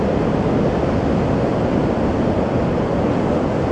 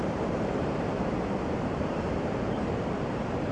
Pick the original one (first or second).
first